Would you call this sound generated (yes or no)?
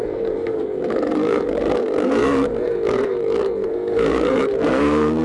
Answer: yes